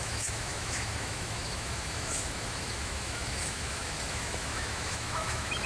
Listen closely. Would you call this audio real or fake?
fake